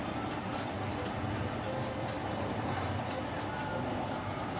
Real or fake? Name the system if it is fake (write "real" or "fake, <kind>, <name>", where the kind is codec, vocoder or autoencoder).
real